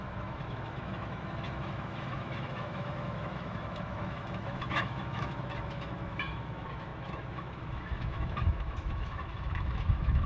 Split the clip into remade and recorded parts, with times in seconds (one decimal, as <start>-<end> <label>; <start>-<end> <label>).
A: 0.0-10.3 remade